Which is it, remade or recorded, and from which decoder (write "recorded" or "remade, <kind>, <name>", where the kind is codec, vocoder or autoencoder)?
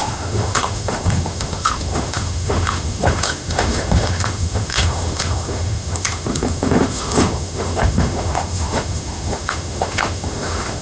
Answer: remade, autoencoder, DAC-VAE